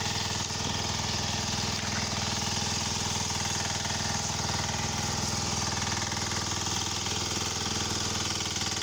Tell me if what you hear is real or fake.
real